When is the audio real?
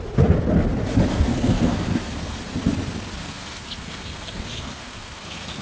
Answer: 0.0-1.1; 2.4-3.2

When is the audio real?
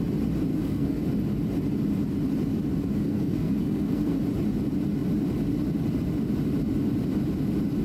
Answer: 0.0-0.5; 1.0-3.0; 4.2-7.8